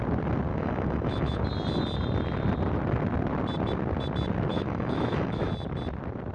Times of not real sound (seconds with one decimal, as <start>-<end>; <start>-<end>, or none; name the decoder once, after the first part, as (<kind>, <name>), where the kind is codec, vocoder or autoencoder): 0.5-1.4 (autoencoder, DAC-VAE); 4.5-5.5

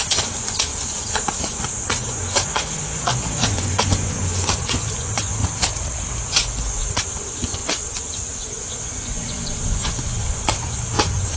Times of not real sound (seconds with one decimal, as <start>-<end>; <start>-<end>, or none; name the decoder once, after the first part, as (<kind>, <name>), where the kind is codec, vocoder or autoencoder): 0.0-5.4 (vocoder, Vocos); 6.1-11.4

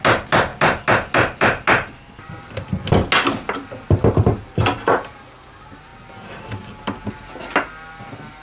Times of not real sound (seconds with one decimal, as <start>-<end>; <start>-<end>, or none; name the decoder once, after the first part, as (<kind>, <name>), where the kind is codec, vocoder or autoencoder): none

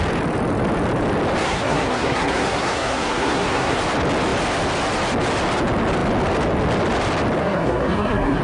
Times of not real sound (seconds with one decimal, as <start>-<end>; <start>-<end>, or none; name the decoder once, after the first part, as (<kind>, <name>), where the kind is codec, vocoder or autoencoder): 1.4-3.8 (codec, SNAC); 7.4-8.4

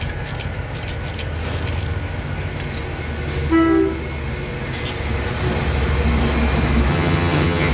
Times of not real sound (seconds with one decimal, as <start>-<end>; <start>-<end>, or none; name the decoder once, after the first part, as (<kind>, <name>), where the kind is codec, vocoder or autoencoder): 6.9-7.7 (vocoder, HiFi-GAN)

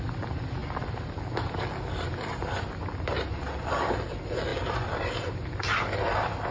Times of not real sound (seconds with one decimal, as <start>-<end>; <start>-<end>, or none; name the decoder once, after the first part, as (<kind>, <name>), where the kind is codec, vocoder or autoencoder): none

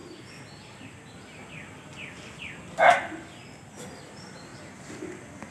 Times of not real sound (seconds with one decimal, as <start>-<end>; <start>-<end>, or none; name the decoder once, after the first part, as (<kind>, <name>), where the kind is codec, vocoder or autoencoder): none

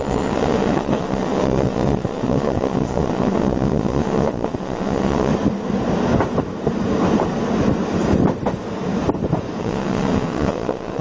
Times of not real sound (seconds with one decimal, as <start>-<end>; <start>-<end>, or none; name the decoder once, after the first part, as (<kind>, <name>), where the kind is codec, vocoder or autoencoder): 0.0-5.3 (vocoder, WaveNeXt); 9.6-11.0